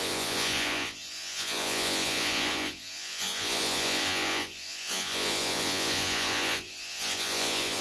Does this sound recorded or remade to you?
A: remade